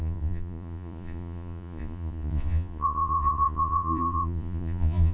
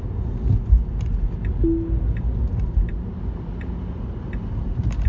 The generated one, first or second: first